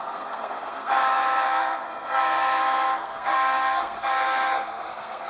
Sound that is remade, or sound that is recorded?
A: remade